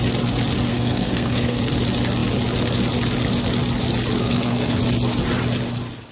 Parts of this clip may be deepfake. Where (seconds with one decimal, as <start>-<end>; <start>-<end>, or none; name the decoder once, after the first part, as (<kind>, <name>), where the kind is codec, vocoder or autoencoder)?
0.7-1.6 (codec, SNAC); 4.2-4.8